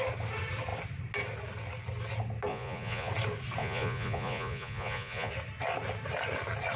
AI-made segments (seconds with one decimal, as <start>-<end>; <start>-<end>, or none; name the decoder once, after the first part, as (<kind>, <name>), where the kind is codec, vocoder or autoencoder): 2.5-3.1 (vocoder, Vocos); 3.6-5.3